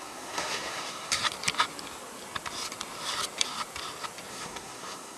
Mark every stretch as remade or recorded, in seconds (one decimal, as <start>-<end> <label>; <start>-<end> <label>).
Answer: 0.0-1.2 remade; 1.2-4.3 recorded; 4.3-5.2 remade